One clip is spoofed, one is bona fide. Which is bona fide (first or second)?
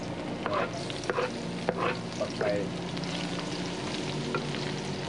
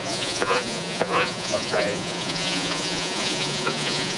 first